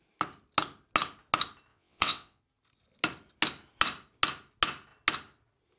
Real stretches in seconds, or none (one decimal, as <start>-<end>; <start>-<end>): 0.0-1.7; 2.4-5.8